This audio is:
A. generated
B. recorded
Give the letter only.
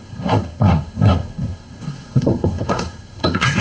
A